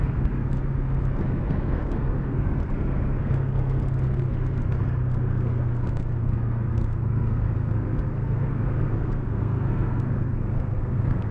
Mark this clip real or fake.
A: fake